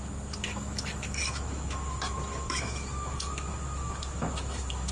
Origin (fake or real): fake